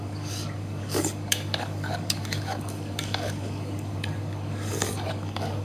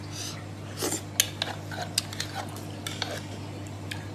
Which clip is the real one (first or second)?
second